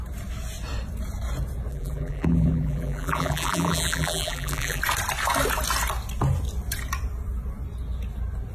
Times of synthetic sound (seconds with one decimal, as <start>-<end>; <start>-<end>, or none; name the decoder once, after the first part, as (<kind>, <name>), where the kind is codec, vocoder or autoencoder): 1.7-4.8 (vocoder, BigVGAN v2)

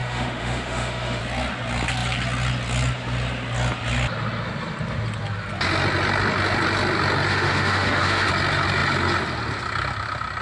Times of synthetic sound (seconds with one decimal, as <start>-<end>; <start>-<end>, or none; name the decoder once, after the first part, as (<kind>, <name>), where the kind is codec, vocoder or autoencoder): 0.0-1.2 (autoencoder, DAC-VAE); 7.3-8.3

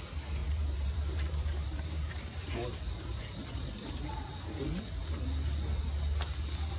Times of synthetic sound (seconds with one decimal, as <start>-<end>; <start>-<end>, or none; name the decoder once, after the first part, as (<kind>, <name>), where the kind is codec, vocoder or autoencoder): 0.4-3.2 (vocoder, BigVGAN v2)

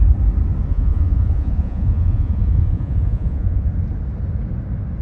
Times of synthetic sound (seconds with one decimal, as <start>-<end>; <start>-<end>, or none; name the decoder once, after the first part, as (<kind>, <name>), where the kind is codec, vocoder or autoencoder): 0.7-3.7 (vocoder, Vocos)